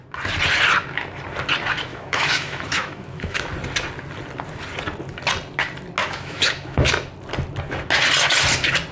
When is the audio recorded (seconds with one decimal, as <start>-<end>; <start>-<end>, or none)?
0.0-1.9; 3.4-6.0; 6.9-8.9